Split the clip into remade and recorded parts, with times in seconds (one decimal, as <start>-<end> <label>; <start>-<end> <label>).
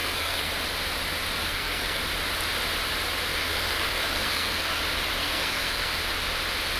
0.0-0.5 remade; 0.5-1.4 recorded; 1.4-2.0 remade; 2.0-3.3 recorded; 3.3-4.8 remade; 4.8-5.2 recorded; 5.2-6.0 remade; 6.0-6.8 recorded